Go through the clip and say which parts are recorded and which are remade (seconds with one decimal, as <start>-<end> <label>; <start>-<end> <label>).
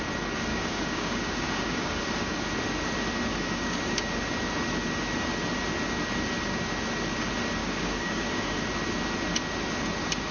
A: 0.0-0.5 recorded; 0.5-2.0 remade; 2.0-3.3 recorded; 3.3-4.1 remade; 4.1-7.6 recorded; 7.6-8.6 remade; 8.6-10.3 recorded